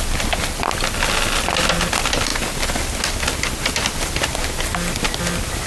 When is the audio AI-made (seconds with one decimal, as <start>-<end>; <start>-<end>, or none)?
none